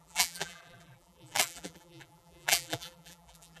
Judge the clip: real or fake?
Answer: fake